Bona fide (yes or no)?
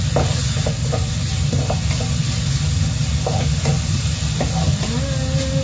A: yes